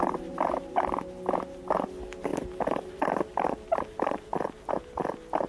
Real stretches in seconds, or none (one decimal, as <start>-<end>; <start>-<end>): 0.0-2.3; 4.7-5.5